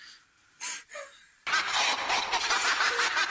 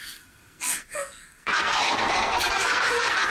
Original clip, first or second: first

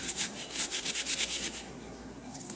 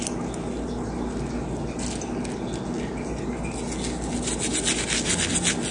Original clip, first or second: second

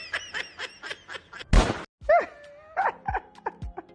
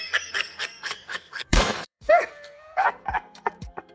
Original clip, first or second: first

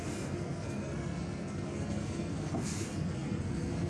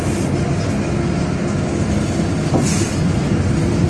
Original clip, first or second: second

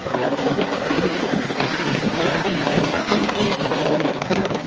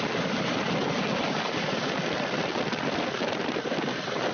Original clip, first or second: second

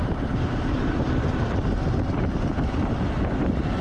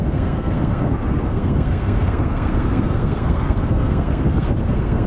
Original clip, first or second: first